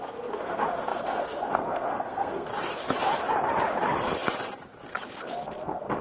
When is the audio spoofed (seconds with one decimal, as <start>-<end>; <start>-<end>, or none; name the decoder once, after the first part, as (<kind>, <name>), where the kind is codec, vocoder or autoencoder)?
0.0-2.5 (codec, SNAC); 5.3-6.0